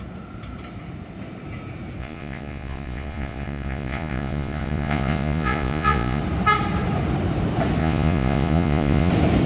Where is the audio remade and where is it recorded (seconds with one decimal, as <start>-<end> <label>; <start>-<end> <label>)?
0.0-2.0 recorded; 2.0-6.2 remade; 6.2-7.8 recorded; 7.8-9.1 remade; 9.1-9.5 recorded